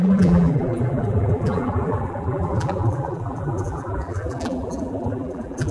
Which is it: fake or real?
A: fake